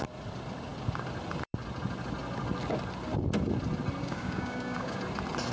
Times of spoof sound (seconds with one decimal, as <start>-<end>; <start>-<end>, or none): 4.0-5.0